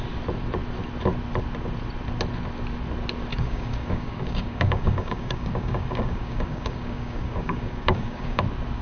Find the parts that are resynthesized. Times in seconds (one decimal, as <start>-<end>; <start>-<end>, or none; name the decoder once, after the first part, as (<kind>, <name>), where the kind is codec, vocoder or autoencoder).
3.3-8.4 (codec, DAC)